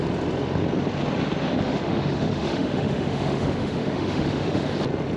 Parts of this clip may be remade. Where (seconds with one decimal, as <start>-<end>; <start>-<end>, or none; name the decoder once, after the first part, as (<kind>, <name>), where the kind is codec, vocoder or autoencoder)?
1.7-4.6 (autoencoder, DAC-VAE)